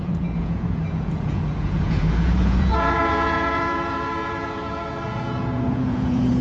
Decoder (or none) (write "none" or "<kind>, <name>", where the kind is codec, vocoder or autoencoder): vocoder, Vocos